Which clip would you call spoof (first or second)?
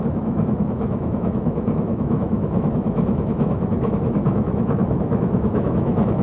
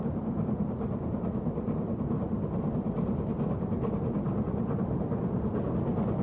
first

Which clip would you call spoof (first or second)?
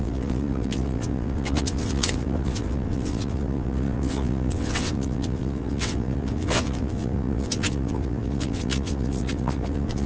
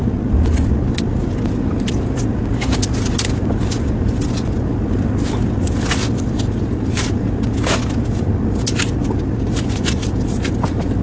first